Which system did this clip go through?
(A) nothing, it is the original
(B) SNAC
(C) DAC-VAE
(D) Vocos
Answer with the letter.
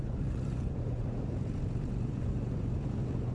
D